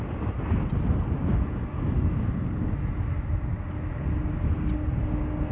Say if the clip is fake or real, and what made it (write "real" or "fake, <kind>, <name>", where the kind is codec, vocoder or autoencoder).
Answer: real